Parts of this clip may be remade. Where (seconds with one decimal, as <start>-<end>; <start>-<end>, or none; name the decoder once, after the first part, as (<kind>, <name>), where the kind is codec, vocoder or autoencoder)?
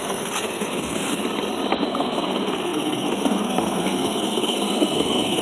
0.0-1.2 (codec, SNAC); 1.8-5.4